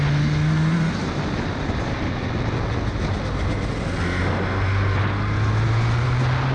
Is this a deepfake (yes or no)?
no